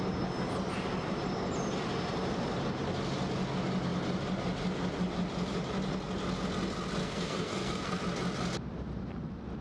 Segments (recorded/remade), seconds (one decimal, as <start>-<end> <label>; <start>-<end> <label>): 0.0-7.0 recorded; 7.0-8.0 remade; 8.0-9.6 recorded